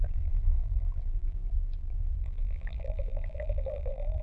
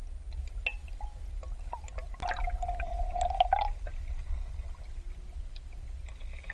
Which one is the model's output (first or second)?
first